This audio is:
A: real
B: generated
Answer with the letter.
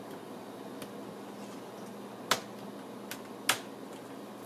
A